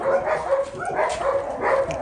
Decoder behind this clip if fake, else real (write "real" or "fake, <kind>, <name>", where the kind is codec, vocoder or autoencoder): real